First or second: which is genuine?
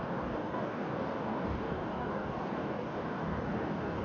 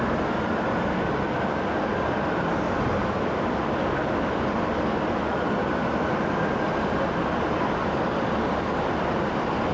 second